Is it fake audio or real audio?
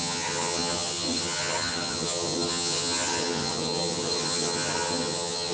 fake